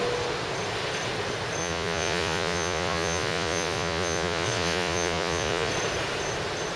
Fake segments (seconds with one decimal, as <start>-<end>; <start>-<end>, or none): 1.6-5.7